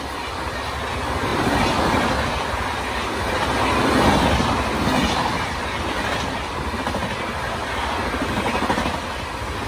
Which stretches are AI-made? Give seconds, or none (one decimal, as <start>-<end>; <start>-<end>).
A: none

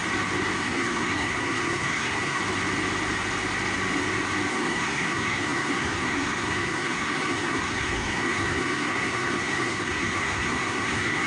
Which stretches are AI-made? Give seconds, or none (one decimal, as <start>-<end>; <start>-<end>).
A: 0.6-2.4; 4.5-11.3

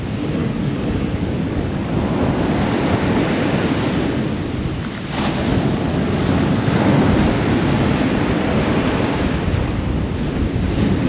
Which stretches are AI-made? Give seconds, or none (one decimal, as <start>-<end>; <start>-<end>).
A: 0.4-1.9; 5.9-6.7

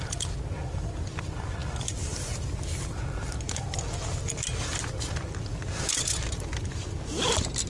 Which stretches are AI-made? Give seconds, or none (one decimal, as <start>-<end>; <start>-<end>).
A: none

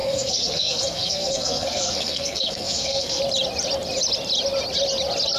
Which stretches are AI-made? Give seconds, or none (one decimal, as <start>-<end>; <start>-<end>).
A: 0.0-3.2

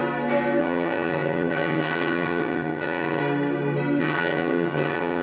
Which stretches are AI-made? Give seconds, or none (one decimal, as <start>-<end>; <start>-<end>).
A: 0.6-3.2; 4.0-5.2

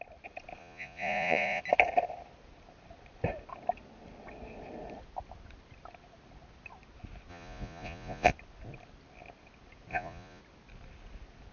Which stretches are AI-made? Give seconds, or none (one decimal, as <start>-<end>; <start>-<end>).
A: 0.6-1.6; 7.3-8.3; 9.9-10.4

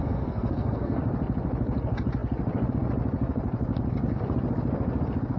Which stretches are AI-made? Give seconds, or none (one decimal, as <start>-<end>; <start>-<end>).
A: 0.0-1.0